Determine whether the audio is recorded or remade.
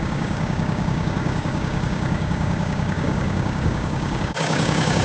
remade